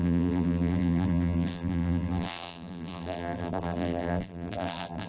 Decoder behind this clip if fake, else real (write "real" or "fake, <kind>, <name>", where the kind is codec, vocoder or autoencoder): fake, vocoder, BigVGAN v2